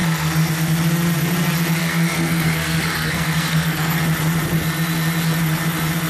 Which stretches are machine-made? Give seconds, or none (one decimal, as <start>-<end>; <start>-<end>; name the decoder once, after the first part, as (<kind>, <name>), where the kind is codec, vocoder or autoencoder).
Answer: 0.0-0.5 (codec, SNAC); 1.8-4.0